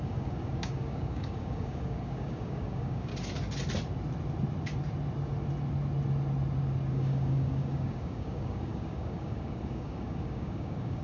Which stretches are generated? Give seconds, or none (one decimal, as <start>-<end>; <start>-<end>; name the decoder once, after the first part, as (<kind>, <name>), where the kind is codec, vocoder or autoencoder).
0.0-3.1 (codec, DAC); 6.9-11.0